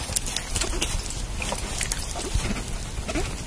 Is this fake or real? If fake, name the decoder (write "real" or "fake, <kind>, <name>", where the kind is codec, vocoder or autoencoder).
real